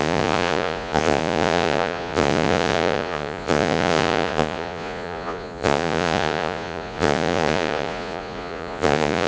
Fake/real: fake